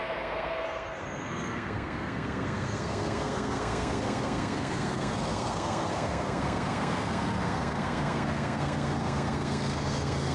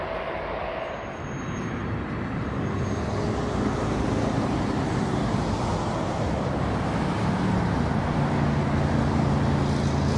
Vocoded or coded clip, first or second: first